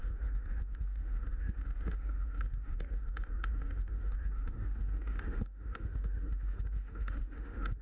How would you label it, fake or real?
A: fake